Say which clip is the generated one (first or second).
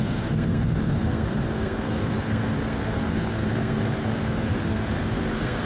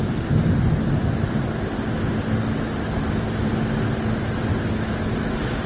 first